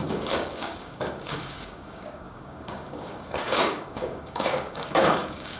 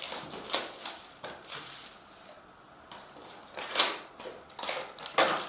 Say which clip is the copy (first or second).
first